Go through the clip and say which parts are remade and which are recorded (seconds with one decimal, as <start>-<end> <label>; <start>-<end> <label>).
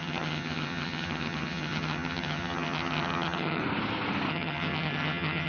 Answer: 0.0-3.6 remade; 3.6-4.3 recorded; 4.3-5.5 remade